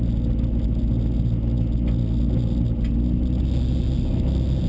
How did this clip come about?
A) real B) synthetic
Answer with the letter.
A